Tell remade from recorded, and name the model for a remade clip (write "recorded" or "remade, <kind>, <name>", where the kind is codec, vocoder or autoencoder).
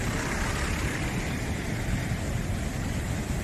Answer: recorded